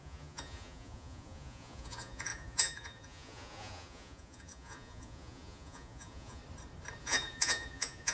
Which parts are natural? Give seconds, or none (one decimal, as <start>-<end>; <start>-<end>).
6.4-7.0